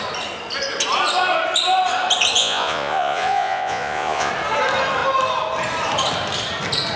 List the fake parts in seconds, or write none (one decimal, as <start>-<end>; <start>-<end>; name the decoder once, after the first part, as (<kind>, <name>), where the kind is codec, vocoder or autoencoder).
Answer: 2.4-4.3 (vocoder, Vocos)